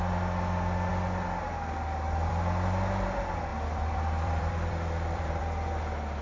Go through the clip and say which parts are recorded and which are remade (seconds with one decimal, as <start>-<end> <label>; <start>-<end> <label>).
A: 0.0-3.5 recorded; 3.5-5.4 remade; 5.4-6.2 recorded